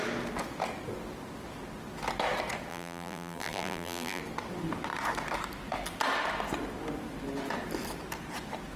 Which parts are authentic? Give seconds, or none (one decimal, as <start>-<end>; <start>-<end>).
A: 0.0-2.7; 4.2-8.8